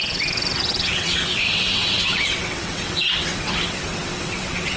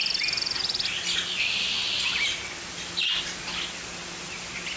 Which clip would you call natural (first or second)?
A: second